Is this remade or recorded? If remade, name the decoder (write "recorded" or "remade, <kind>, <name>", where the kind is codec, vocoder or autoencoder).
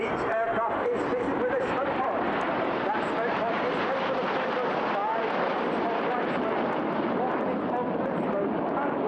recorded